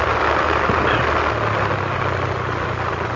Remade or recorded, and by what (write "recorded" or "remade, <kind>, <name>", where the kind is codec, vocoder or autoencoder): recorded